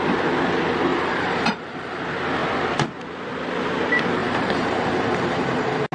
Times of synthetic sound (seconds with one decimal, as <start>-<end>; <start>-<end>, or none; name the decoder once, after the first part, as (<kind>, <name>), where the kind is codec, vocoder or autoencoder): 0.9-2.0 (vocoder, BigVGAN v2); 4.2-5.9